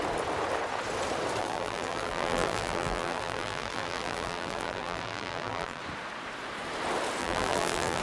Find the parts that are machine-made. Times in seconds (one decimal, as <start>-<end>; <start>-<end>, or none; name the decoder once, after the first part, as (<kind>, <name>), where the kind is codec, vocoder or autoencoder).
1.4-5.8 (vocoder, BigVGAN v2); 7.2-8.0